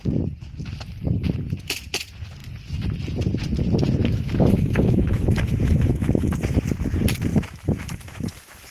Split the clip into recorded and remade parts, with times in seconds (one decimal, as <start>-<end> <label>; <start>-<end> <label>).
0.0-4.0 recorded; 4.0-6.3 remade; 6.3-7.3 recorded; 7.3-8.7 remade